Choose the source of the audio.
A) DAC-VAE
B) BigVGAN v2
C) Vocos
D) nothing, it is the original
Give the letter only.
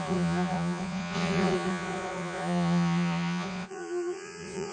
C